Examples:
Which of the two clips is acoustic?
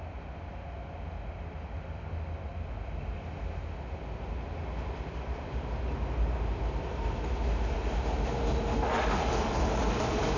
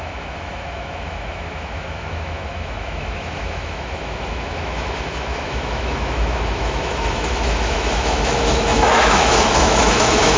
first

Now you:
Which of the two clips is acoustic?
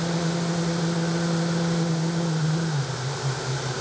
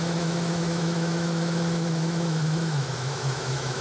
first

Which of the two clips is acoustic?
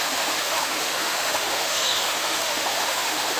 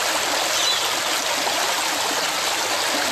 second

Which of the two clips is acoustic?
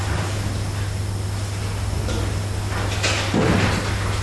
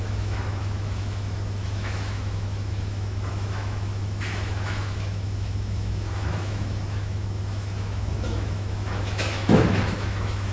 first